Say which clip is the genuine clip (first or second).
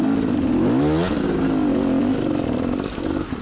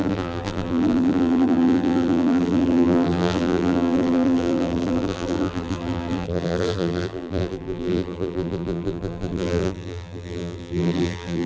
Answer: first